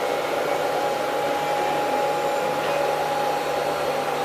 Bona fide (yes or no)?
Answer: yes